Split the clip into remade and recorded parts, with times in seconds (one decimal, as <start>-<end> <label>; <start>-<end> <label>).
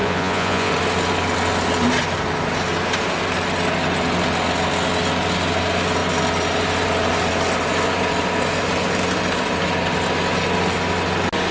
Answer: 0.0-0.7 remade; 0.7-11.5 recorded